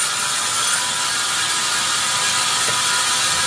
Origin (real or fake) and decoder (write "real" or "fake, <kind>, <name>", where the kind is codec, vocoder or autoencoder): real